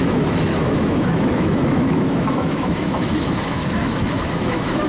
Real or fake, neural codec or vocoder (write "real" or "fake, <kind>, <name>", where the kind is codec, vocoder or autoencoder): fake, autoencoder, DAC-VAE